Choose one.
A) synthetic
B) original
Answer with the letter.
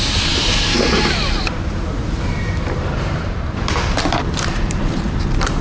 A